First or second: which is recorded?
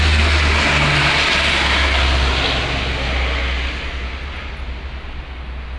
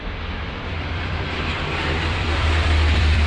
first